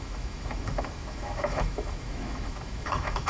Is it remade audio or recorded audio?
remade